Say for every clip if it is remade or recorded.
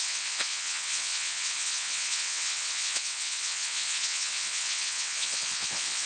remade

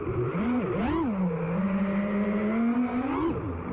recorded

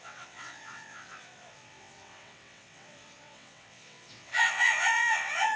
remade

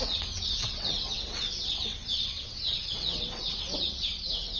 remade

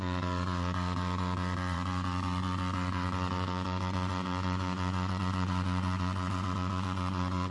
remade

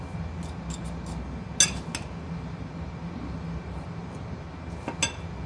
recorded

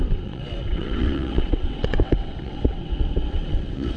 remade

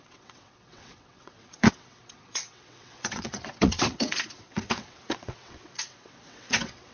remade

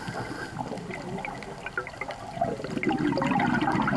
recorded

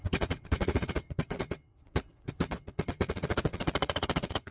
remade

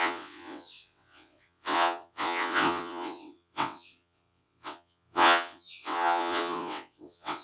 remade